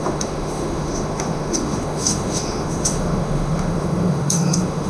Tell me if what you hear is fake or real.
fake